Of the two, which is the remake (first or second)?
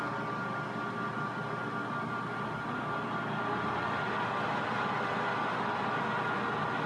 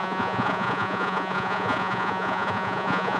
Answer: second